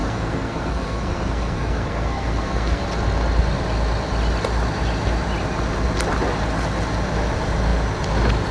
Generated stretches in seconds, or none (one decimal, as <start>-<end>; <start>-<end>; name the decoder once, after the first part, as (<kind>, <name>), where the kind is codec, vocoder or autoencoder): 0.0-2.8 (codec, SNAC)